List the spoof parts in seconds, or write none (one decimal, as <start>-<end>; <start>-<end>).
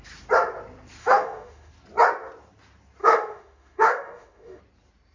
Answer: 1.0-1.7; 3.0-4.6